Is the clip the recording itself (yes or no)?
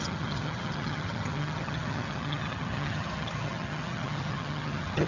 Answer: no